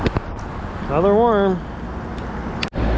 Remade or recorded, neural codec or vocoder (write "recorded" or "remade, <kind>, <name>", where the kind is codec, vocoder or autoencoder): recorded